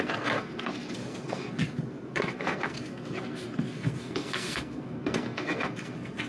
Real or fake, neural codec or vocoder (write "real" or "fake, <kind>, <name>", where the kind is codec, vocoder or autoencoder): fake, codec, SNAC